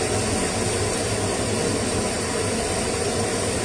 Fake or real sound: real